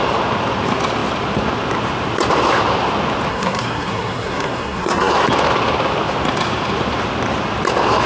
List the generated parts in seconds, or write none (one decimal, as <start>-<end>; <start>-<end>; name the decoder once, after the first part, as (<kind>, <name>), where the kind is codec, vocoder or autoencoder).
3.3-5.1 (codec, SNAC)